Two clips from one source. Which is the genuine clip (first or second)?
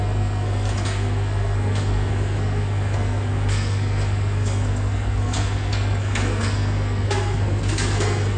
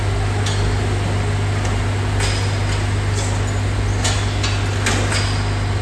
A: second